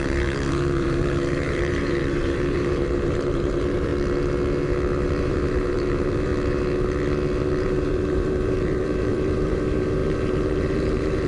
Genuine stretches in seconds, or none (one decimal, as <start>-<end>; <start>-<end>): 3.9-5.2; 6.3-7.6